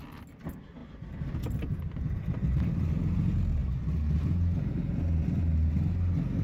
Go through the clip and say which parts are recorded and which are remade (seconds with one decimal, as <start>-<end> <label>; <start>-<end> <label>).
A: 0.0-6.4 recorded